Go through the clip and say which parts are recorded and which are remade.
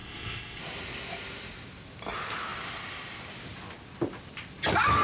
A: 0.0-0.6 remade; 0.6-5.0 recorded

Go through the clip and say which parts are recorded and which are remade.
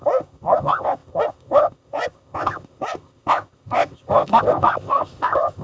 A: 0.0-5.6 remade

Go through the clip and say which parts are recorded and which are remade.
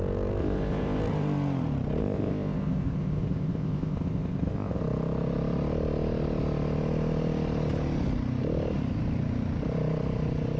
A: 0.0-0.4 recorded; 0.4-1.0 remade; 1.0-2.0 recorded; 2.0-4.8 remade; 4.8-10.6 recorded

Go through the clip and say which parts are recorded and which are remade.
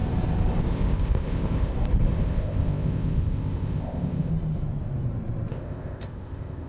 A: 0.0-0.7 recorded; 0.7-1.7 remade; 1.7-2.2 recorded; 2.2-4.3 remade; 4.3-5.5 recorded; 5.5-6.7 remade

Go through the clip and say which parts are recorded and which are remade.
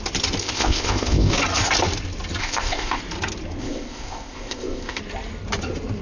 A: 0.0-0.4 recorded; 0.4-1.3 remade; 1.3-2.4 recorded; 2.4-3.0 remade; 3.0-3.6 recorded; 3.6-5.0 remade; 5.0-6.0 recorded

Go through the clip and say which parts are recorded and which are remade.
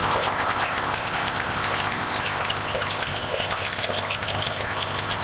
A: 0.0-5.2 remade